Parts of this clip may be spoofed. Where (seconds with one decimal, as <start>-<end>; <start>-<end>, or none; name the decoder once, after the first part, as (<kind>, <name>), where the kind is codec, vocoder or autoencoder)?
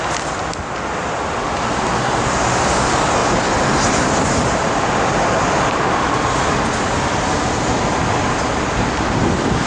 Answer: none